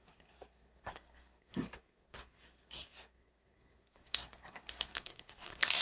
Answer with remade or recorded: remade